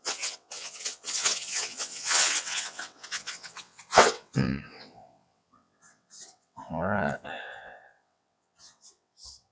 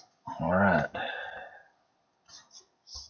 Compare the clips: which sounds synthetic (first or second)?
first